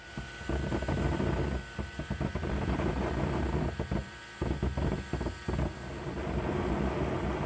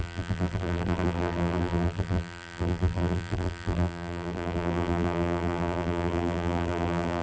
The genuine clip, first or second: first